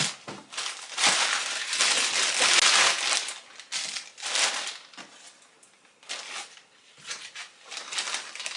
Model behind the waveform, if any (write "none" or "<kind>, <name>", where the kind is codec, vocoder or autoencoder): none